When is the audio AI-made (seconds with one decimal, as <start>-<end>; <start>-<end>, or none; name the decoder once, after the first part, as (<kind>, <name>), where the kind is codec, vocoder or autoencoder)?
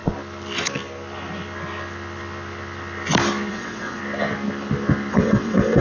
3.5-4.0 (vocoder, WaveNeXt); 5.1-5.8